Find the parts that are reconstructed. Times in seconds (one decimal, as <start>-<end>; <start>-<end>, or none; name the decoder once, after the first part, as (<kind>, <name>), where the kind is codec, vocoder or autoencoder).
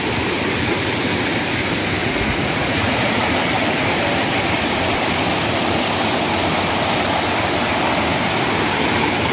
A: 2.0-3.4 (vocoder, Vocos)